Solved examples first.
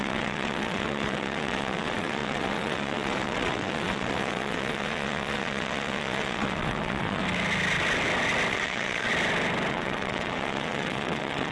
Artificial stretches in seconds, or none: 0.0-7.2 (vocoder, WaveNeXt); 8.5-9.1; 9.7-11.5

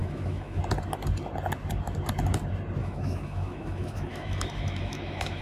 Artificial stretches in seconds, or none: 0.0-0.6 (autoencoder, DAC-VAE); 2.8-5.4

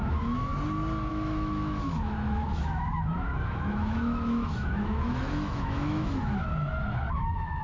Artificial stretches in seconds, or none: 0.0-0.5 (autoencoder, DAC-VAE); 1.1-6.5; 7.1-7.6